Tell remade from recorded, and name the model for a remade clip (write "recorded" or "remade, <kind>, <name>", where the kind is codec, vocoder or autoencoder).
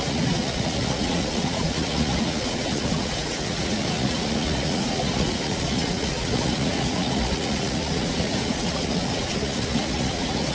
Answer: remade, vocoder, Vocos